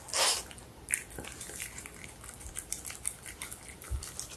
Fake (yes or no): no